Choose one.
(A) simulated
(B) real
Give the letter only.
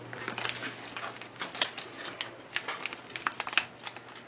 B